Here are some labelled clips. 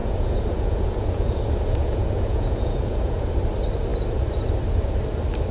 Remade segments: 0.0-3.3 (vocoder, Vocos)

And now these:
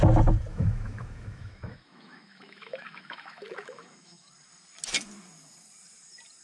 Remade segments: 0.5-4.3 (autoencoder, DAC-VAE)

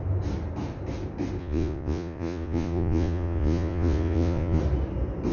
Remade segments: 1.4-4.6 (vocoder, Vocos)

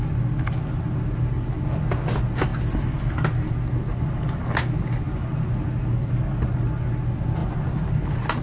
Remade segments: none

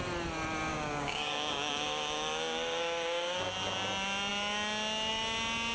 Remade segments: 0.7-3.4 (codec, DAC)

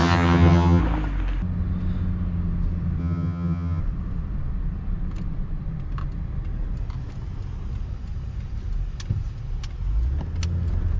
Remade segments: 0.0-0.8 (vocoder, HiFi-GAN); 3.0-3.8